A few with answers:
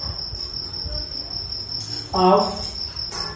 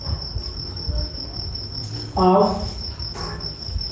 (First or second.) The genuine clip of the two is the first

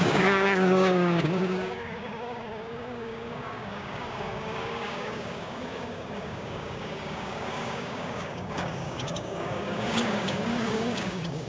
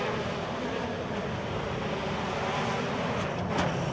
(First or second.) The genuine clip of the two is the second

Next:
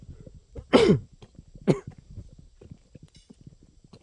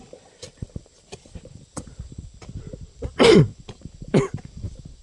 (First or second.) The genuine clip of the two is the first